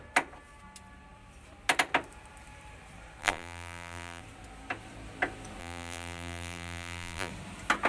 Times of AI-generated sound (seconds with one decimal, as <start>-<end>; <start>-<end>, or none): 3.2-4.2; 5.6-7.3